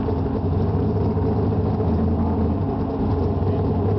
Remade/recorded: recorded